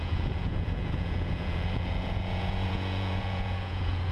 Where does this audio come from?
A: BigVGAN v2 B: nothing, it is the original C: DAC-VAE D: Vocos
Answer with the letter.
D